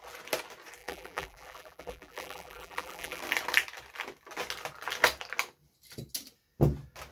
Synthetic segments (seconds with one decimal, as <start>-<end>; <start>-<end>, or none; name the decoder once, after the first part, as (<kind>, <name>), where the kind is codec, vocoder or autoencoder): 0.8-3.2 (vocoder, BigVGAN v2)